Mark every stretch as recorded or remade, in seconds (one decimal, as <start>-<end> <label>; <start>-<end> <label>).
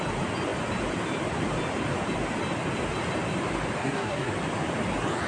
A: 0.0-3.8 recorded; 3.8-4.3 remade; 4.3-5.3 recorded